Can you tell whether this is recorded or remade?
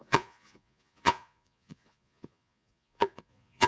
remade